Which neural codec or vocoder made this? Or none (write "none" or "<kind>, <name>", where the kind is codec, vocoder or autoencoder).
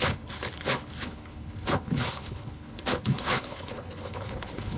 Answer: codec, HILCodec